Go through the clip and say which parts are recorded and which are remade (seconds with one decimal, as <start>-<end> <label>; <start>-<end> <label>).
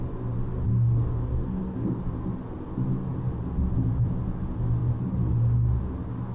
0.0-0.7 recorded; 0.7-2.0 remade; 2.0-6.3 recorded